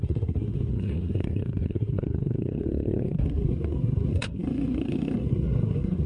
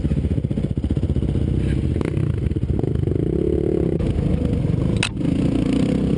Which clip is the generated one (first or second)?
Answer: first